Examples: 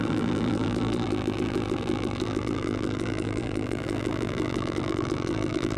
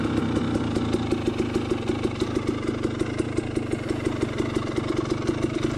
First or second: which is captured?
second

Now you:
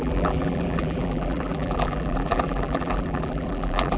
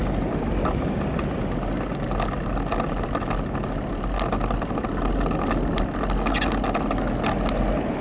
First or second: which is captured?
second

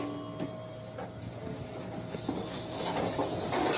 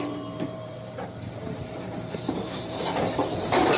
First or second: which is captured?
first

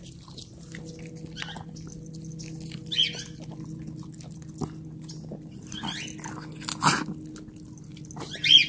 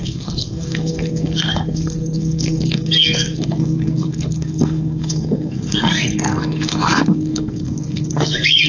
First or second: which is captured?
first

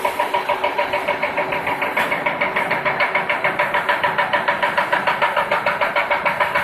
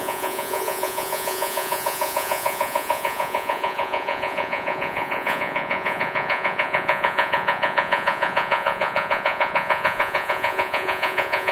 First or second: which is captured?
first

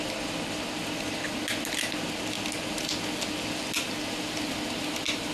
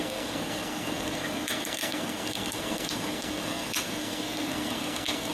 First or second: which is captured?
first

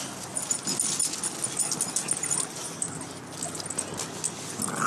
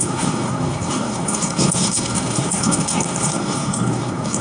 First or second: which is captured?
first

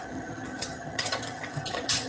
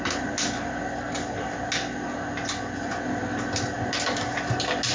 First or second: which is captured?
second